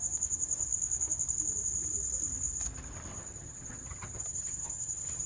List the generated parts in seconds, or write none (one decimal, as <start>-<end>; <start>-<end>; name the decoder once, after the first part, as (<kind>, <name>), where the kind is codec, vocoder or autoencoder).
3.1-5.3 (vocoder, HiFi-GAN)